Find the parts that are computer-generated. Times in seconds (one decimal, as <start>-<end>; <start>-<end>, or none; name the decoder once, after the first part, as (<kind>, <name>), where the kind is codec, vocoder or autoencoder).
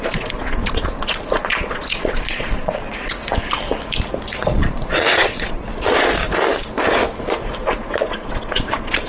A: 0.0-3.2 (vocoder, Vocos); 4.5-6.2; 7.2-9.1